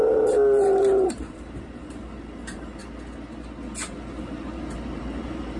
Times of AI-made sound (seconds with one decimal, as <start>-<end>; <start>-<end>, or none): 0.0-2.8; 5.0-5.6